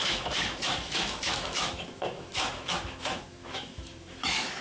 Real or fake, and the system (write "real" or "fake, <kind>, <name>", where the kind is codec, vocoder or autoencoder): fake, autoencoder, DAC-VAE